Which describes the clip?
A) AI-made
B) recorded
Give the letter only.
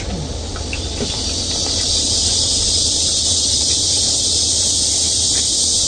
A